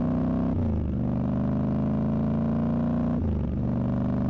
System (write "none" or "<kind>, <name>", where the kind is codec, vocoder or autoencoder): none